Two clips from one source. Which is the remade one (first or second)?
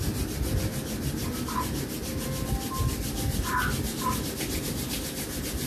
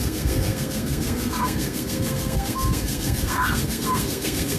second